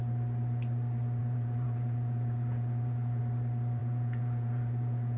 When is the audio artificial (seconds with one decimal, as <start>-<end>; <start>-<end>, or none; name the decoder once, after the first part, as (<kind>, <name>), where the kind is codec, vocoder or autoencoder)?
1.2-3.2 (vocoder, Vocos); 3.8-5.2